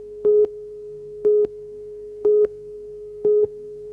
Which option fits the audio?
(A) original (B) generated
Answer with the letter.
B